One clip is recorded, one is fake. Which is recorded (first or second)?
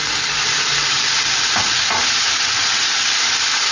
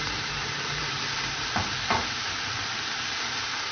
first